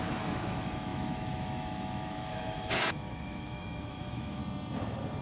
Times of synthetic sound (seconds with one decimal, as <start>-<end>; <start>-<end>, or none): 0.0-4.4